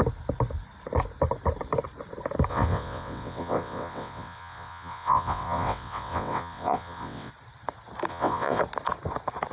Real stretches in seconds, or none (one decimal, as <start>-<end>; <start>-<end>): 0.0-2.5; 7.3-8.1; 8.6-9.5